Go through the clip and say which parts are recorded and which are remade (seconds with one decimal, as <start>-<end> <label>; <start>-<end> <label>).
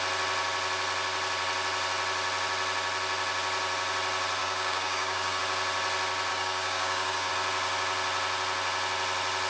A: 0.0-4.4 recorded; 4.4-5.4 remade; 5.4-6.3 recorded; 6.3-7.3 remade; 7.3-9.5 recorded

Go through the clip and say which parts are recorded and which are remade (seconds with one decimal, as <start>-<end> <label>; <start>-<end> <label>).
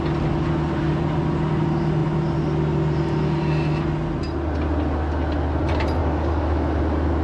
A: 0.0-6.0 recorded; 6.0-6.8 remade; 6.8-7.2 recorded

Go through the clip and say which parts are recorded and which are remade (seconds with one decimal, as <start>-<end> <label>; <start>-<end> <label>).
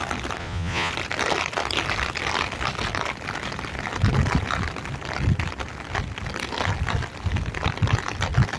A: 0.0-0.4 recorded; 0.4-0.9 remade; 0.9-8.6 recorded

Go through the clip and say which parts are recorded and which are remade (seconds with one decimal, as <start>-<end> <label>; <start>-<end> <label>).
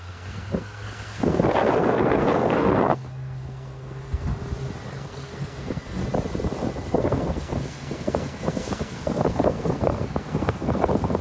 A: 0.0-4.3 remade; 4.3-4.9 recorded; 4.9-6.0 remade; 6.0-6.9 recorded; 6.9-11.2 remade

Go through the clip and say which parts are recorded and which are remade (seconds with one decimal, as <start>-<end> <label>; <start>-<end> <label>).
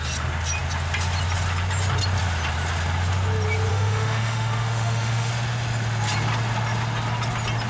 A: 0.0-3.7 recorded; 3.7-5.3 remade; 5.3-7.7 recorded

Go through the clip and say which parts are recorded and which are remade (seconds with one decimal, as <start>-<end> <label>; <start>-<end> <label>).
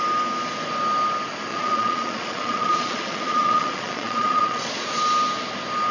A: 0.0-1.5 recorded; 1.5-5.0 remade; 5.0-5.9 recorded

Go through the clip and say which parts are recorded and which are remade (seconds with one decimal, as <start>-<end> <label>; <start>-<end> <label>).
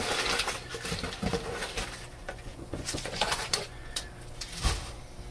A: 0.0-2.2 recorded; 2.2-4.1 remade; 4.1-5.3 recorded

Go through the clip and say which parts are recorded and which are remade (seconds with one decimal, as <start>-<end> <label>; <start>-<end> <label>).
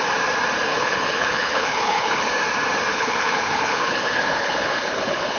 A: 0.0-0.7 recorded; 0.7-2.3 remade; 2.3-2.9 recorded; 2.9-5.4 remade